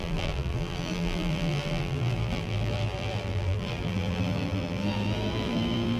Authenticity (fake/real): fake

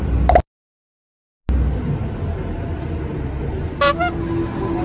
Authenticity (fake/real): real